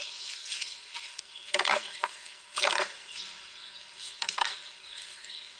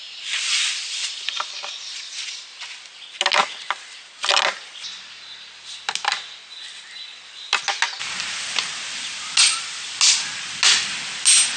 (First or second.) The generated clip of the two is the first